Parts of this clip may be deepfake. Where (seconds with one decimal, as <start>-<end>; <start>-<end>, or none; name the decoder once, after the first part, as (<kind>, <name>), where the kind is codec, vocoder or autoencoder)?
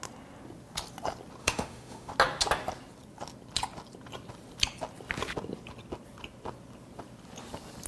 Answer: 1.4-2.1 (autoencoder, DAC-VAE)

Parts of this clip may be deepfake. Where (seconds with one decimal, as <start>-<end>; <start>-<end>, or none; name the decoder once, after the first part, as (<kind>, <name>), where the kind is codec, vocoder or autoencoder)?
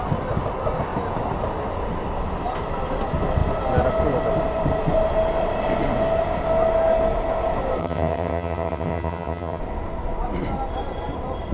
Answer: 7.8-9.6 (vocoder, HiFi-GAN)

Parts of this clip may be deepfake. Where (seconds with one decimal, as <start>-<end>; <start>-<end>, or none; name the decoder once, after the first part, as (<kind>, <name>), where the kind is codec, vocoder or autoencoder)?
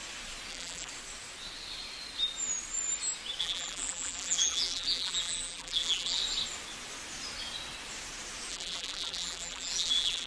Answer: 0.5-0.9 (vocoder, BigVGAN v2); 3.4-6.2; 8.5-10.3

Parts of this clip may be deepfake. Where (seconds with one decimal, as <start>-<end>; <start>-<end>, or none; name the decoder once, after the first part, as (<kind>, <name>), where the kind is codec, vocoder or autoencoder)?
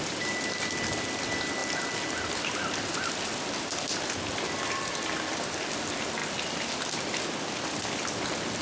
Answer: none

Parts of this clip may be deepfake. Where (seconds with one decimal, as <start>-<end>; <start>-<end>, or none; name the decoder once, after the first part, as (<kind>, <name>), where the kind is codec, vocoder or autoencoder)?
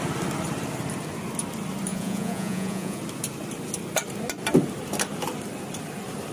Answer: 1.9-3.0 (vocoder, Vocos)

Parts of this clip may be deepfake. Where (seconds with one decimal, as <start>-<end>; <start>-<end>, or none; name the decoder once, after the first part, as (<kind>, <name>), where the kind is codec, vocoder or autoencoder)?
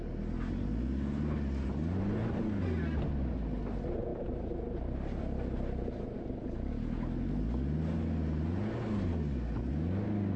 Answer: none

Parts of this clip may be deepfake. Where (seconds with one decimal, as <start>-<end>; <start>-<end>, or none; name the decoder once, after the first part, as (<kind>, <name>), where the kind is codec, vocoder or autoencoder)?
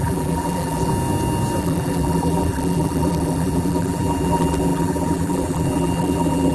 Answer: 0.0-0.9 (vocoder, BigVGAN v2); 1.6-6.5